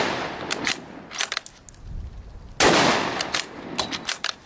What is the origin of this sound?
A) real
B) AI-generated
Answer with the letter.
A